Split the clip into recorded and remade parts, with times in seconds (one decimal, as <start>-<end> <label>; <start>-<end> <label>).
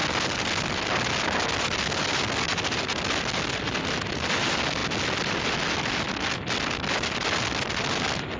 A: 0.0-8.4 recorded